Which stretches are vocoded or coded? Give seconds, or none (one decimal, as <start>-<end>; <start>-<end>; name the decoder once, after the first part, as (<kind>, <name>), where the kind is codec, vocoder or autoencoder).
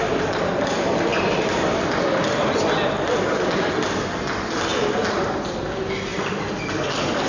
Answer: 1.1-3.7 (vocoder, BigVGAN v2); 6.1-6.7